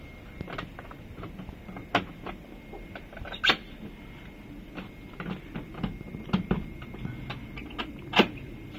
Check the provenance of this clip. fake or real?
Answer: real